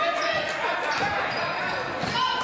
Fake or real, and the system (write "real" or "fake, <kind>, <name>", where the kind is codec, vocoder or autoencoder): real